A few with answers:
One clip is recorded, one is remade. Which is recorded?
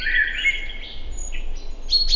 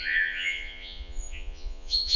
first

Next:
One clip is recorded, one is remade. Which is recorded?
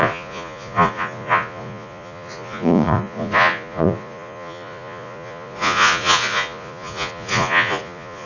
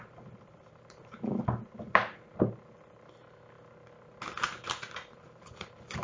second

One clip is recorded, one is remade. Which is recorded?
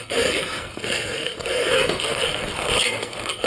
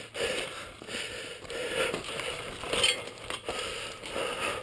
second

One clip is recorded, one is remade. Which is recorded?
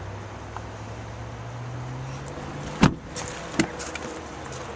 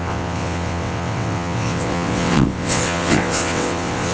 first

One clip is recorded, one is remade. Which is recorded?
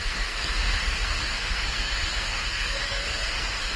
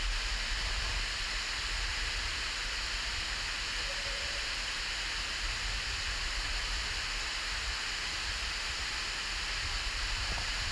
second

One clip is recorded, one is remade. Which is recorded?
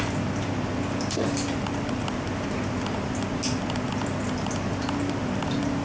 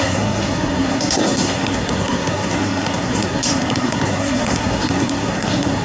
first